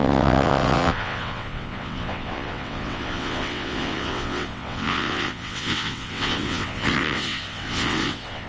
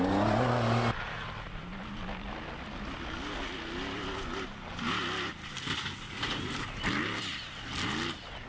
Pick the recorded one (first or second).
second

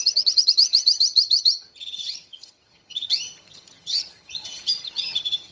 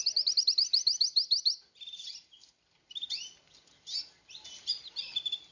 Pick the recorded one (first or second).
second